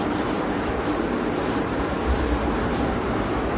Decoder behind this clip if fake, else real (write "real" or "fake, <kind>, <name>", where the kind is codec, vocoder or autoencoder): fake, vocoder, BigVGAN v2